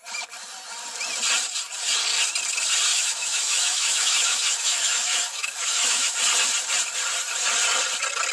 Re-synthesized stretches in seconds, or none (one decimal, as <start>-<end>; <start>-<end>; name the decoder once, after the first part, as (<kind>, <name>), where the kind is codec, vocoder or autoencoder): 2.9-6.2 (autoencoder, DAC-VAE)